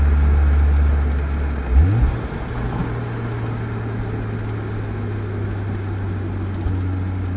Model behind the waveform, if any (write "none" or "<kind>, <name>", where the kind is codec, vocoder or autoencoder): none